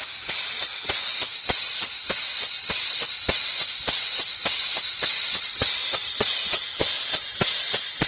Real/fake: real